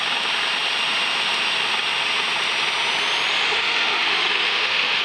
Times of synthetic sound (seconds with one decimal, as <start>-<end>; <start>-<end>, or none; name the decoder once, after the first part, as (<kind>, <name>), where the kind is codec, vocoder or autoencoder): 3.3-5.0 (autoencoder, DAC-VAE)